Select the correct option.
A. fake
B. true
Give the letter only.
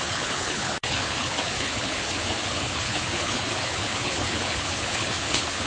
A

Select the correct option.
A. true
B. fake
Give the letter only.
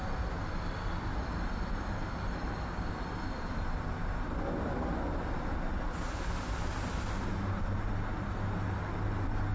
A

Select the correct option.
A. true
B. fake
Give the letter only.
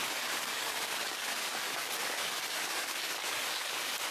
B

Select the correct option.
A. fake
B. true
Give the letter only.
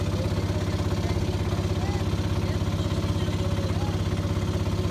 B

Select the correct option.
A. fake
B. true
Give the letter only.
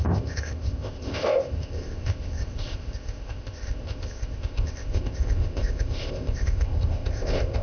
A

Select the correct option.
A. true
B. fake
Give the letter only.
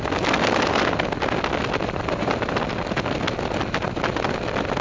A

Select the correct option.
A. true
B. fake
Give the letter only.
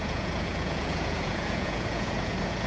B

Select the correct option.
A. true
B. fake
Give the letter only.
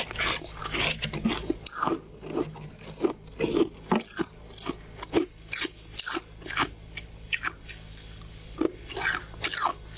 A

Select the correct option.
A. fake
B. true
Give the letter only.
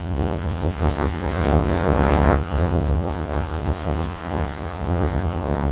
A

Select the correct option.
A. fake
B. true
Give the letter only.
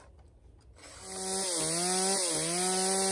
B